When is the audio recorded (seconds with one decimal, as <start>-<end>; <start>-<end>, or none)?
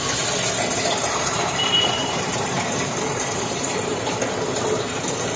0.0-1.0; 4.2-5.4